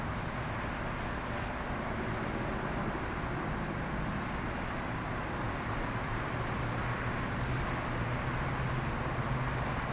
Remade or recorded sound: recorded